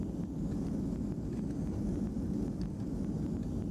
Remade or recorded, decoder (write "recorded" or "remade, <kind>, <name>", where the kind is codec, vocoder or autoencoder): recorded